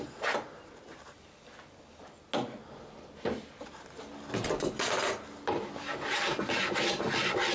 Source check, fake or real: real